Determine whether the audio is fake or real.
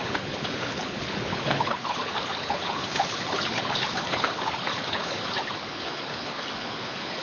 fake